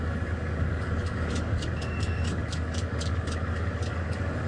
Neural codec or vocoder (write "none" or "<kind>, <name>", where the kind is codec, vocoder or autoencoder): codec, DAC